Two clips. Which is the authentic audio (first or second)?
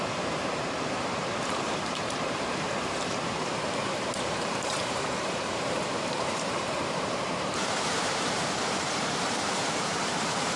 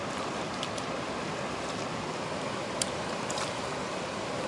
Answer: second